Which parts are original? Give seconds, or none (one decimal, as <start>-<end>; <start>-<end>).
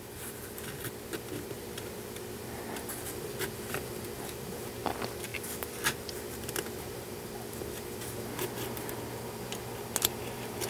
0.0-10.7